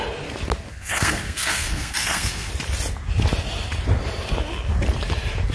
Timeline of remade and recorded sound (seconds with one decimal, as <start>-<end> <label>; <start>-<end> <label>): 0.0-0.7 recorded; 0.7-2.5 remade; 2.5-5.5 recorded